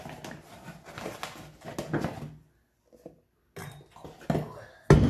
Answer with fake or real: real